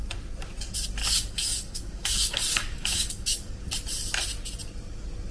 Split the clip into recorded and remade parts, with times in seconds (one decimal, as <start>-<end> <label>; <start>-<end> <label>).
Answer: 0.0-1.0 recorded; 1.0-3.6 remade; 3.6-5.3 recorded